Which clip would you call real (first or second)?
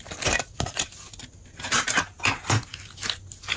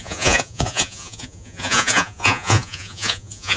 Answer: first